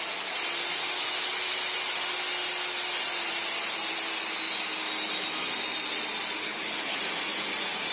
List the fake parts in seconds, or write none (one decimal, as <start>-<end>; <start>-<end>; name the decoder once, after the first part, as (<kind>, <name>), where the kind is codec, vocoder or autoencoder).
6.4-7.0 (codec, HILCodec)